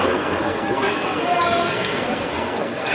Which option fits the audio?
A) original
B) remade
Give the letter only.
B